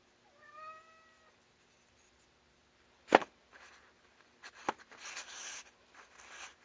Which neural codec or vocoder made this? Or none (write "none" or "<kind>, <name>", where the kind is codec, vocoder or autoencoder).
none